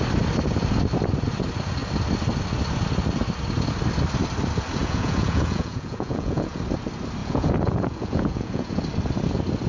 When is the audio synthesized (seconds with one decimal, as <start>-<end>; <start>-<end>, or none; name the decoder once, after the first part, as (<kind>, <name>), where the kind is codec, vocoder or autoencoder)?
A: 4.8-6.6 (vocoder, Vocos); 7.2-8.8

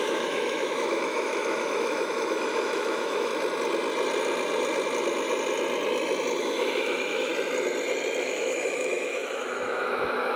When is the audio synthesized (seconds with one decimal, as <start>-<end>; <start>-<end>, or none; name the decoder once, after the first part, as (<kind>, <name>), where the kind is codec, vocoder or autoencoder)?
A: 0.0-3.3 (autoencoder, DAC-VAE); 6.4-7.3; 8.2-10.4